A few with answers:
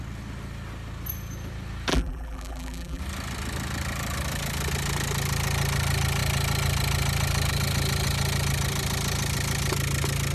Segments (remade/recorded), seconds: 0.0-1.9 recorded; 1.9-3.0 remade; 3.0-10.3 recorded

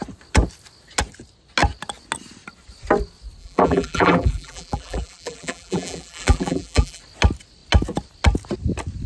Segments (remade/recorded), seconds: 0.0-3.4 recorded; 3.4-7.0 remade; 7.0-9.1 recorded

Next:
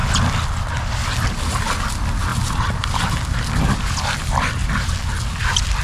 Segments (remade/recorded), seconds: 0.0-5.8 recorded

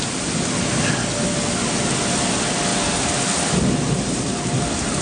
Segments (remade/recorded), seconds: 0.0-5.0 recorded

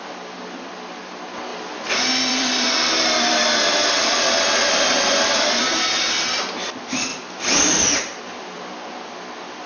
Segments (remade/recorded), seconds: 0.0-1.5 recorded; 1.5-5.8 remade; 5.8-7.1 recorded; 7.1-9.7 remade